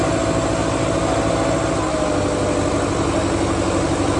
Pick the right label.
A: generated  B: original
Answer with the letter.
B